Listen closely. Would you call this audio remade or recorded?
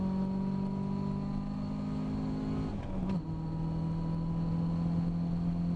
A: recorded